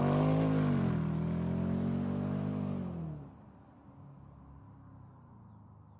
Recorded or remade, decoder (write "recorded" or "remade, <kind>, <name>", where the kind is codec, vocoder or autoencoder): recorded